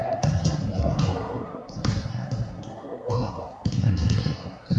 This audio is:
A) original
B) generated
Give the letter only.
B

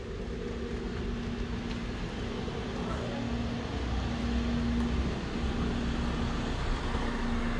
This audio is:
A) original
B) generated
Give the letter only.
A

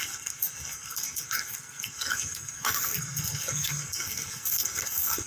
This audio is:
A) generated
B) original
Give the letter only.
A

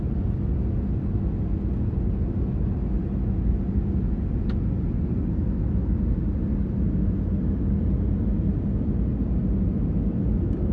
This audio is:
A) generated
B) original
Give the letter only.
B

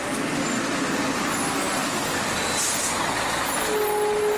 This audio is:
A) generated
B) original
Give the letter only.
B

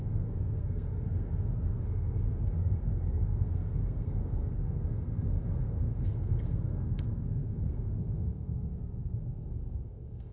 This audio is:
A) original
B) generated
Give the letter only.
B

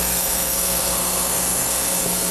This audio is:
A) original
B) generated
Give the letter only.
B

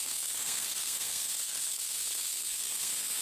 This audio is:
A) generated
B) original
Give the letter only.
A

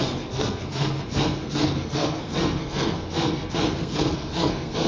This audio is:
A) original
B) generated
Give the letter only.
B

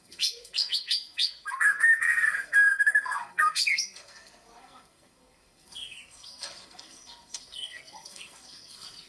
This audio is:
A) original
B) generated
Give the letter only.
B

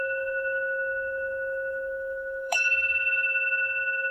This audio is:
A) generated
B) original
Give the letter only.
A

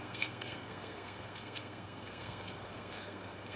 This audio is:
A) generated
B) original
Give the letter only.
A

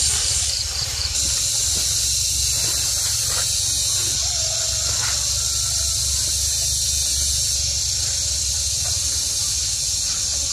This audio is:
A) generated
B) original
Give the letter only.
B